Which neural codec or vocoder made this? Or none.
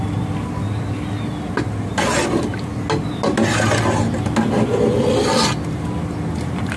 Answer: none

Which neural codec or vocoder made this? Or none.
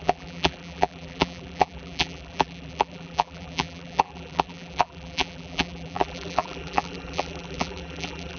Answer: vocoder, BigVGAN v2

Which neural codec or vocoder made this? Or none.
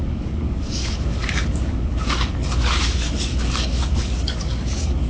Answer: codec, DAC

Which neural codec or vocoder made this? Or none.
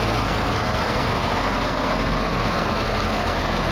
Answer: codec, SNAC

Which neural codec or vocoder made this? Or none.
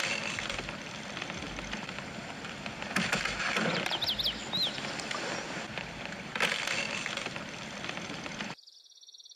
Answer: none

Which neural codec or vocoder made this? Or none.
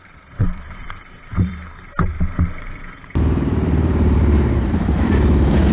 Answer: vocoder, BigVGAN v2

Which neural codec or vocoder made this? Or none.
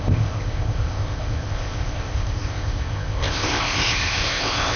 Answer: codec, ZipCodec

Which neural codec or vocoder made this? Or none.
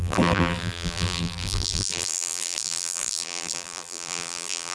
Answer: vocoder, BigVGAN v2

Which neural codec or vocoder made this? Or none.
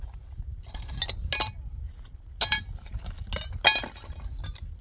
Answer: none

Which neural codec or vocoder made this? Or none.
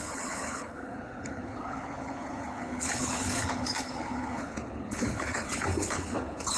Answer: codec, HILCodec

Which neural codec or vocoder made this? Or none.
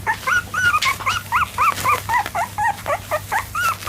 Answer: none